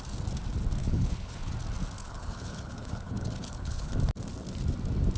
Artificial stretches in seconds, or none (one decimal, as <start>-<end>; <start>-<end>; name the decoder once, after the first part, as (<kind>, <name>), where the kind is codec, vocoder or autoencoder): 0.8-1.5 (codec, HILCodec); 2.0-3.9